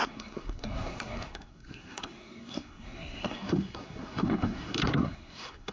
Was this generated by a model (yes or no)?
yes